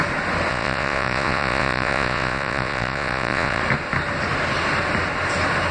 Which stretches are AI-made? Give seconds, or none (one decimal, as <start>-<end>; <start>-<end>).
0.5-3.6